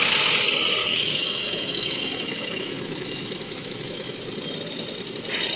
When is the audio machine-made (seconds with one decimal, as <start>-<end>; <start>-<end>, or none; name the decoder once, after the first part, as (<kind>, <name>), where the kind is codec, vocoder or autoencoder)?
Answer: 0.8-4.2 (autoencoder, DAC-VAE)